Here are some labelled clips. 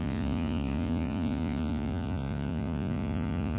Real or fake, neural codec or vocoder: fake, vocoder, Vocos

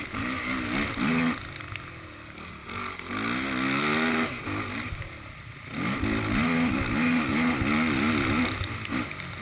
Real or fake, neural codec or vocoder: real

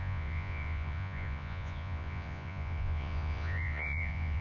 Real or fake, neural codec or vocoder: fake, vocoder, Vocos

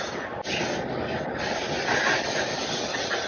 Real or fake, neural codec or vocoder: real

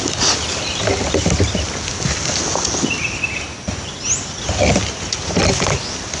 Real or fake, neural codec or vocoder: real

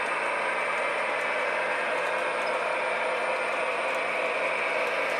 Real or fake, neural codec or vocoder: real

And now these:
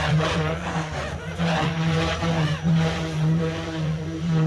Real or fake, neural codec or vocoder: fake, vocoder, Vocos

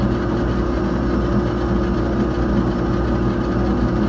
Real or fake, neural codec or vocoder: real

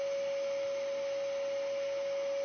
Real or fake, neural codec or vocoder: real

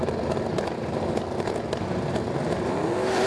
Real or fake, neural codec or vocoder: real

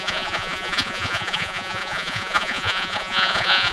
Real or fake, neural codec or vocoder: fake, vocoder, Vocos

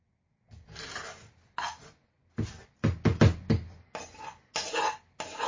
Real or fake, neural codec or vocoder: real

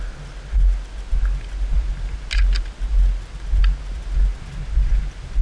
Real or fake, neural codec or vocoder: real